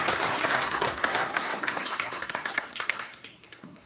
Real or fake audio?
fake